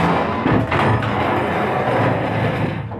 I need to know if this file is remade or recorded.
recorded